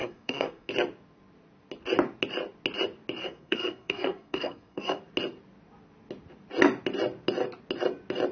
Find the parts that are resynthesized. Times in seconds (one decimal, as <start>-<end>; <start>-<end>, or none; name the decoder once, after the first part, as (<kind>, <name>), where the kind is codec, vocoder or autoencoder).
0.0-0.7 (codec, SNAC); 3.2-5.0